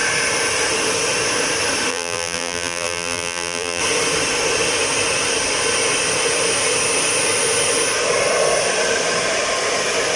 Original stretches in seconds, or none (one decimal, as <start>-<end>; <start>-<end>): 0.0-1.9; 3.8-10.2